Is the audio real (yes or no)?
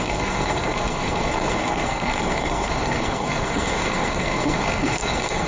no